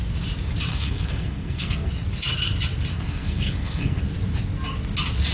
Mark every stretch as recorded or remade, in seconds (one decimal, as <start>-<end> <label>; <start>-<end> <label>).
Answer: 0.0-0.7 recorded; 0.7-1.9 remade; 1.9-2.9 recorded; 2.9-4.0 remade; 4.0-5.3 recorded